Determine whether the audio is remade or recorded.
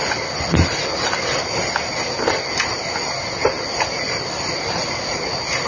recorded